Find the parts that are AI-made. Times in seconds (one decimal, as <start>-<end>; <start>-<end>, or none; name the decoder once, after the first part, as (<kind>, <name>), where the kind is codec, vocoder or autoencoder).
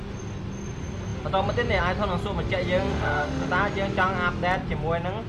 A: 2.9-3.5 (autoencoder, DAC-VAE)